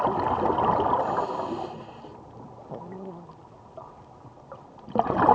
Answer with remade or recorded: recorded